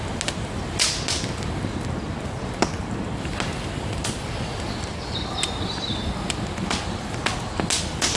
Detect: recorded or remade recorded